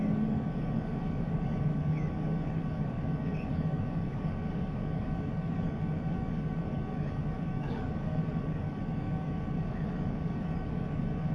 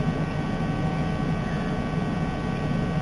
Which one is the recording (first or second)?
second